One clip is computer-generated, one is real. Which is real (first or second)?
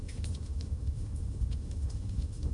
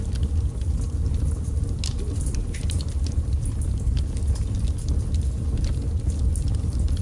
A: second